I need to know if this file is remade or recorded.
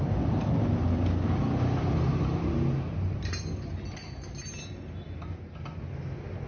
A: recorded